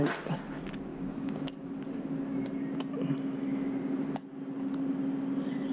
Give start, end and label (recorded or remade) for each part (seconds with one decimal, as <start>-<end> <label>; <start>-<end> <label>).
0.0-0.9 recorded; 0.9-1.5 remade; 1.5-5.7 recorded